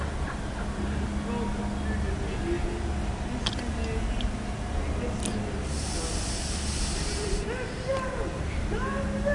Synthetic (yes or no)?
no